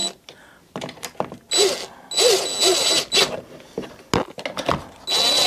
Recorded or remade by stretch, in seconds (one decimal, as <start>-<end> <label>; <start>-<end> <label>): 0.0-5.5 recorded